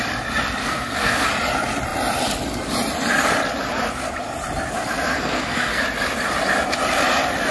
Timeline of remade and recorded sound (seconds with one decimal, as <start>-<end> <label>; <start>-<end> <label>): 0.0-0.6 recorded; 0.6-1.3 remade; 1.3-5.1 recorded; 5.1-5.8 remade; 5.8-7.5 recorded